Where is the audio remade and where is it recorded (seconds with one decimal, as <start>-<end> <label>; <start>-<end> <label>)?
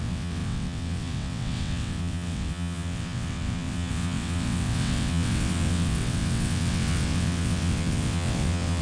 0.0-8.8 remade